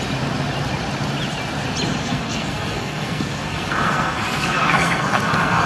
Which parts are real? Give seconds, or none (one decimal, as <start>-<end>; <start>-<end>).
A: 0.0-2.0